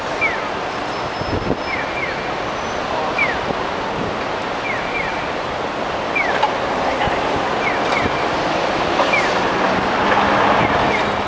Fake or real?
real